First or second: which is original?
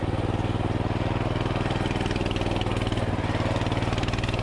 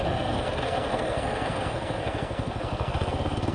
first